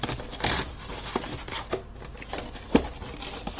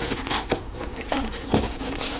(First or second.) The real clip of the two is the first